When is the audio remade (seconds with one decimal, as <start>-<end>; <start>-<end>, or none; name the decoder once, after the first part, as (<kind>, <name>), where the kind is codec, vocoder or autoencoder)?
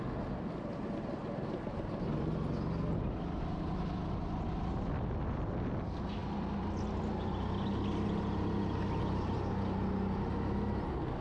none